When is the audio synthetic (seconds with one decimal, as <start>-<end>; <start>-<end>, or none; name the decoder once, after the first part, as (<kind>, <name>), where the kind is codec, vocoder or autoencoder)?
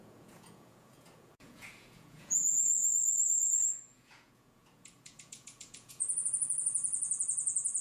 0.0-7.8 (vocoder, Vocos)